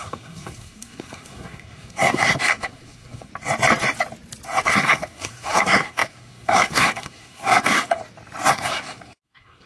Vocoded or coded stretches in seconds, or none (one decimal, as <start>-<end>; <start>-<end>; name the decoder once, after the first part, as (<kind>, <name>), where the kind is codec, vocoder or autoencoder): 0.0-3.3 (codec, SNAC); 4.6-8.0; 8.5-9.7